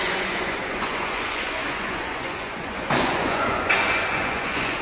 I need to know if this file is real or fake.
fake